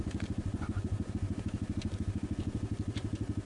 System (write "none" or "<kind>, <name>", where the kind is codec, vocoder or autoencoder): none